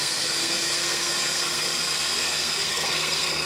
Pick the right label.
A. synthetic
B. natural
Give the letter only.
A